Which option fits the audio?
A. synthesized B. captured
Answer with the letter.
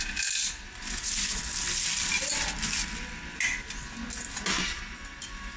B